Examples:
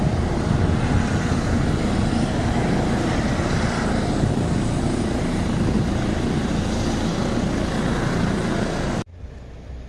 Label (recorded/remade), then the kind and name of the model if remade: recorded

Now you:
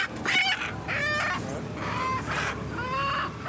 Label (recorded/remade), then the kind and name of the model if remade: recorded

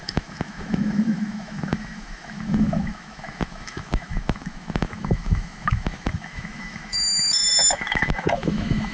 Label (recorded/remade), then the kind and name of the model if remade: remade, autoencoder, DAC-VAE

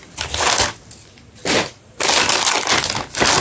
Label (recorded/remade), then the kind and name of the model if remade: recorded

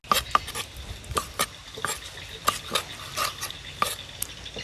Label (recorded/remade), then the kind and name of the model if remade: recorded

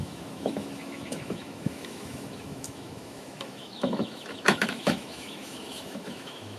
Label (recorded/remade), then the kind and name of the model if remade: remade, autoencoder, DAC-VAE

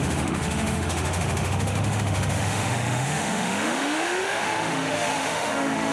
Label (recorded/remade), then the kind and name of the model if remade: remade, autoencoder, DAC-VAE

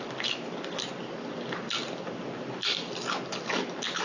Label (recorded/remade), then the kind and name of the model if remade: recorded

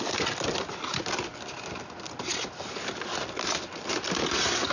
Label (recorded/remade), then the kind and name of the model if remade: recorded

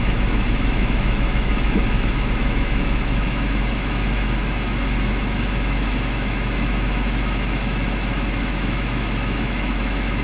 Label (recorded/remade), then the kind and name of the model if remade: remade, autoencoder, DAC-VAE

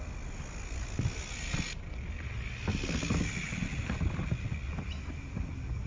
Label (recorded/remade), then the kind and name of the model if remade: recorded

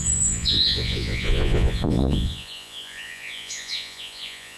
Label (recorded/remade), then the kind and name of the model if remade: remade, vocoder, Vocos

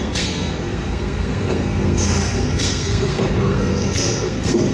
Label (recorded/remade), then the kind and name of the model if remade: remade, codec, SNAC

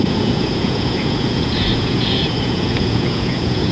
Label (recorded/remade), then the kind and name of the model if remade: remade, vocoder, Vocos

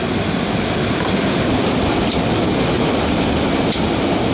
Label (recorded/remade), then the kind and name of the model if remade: recorded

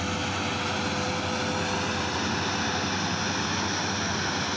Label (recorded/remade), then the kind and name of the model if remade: recorded